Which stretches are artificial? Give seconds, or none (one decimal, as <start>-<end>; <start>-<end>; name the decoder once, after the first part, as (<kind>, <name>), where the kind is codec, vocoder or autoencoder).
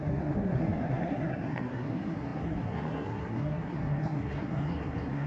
0.0-5.3 (codec, SNAC)